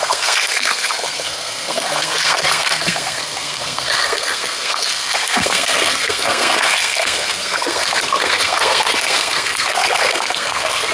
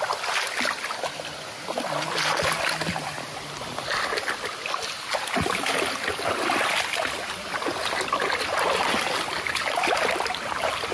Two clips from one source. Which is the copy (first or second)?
first